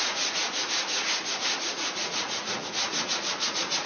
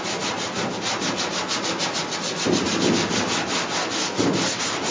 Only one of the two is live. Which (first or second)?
second